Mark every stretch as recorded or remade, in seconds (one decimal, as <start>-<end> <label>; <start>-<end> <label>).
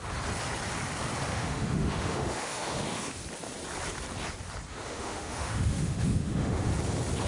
0.0-1.3 recorded; 1.3-3.2 remade; 3.2-4.7 recorded; 4.7-6.7 remade; 6.7-7.3 recorded